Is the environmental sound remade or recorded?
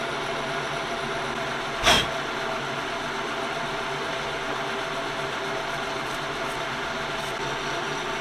recorded